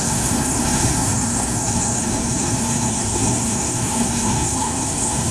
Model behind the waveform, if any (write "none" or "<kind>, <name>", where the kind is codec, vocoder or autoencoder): codec, SNAC